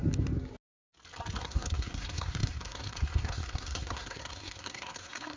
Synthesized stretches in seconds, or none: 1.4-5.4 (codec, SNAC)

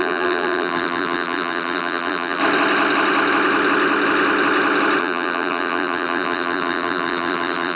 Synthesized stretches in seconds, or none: 0.0-2.4 (vocoder, BigVGAN v2); 5.0-7.8

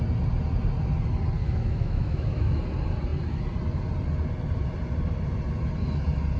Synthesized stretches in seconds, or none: 1.4-2.6 (autoencoder, DAC-VAE)

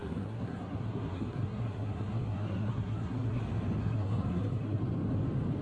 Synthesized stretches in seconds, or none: 0.0-3.4 (codec, SNAC); 3.8-4.8

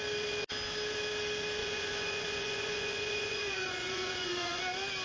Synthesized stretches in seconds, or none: 1.6-4.6 (vocoder, Vocos)

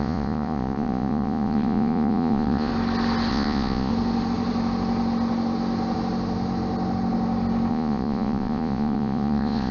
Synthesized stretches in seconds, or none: 0.0-2.7 (vocoder, Vocos); 3.3-3.9; 7.7-9.7

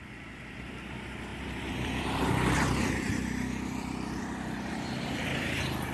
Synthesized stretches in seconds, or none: 0.0-5.9 (vocoder, BigVGAN v2)

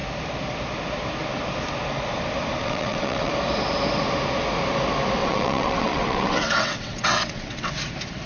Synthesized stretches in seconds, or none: 2.6-3.3 (vocoder, WaveNeXt); 5.2-7.7